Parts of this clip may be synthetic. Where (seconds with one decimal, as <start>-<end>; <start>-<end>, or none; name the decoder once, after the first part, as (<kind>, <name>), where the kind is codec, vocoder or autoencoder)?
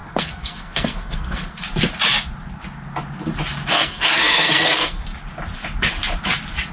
0.0-1.6 (codec, SNAC); 3.7-5.0